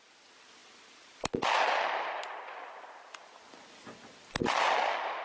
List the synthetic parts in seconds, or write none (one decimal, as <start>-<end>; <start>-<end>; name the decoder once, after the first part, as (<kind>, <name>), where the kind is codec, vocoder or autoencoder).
none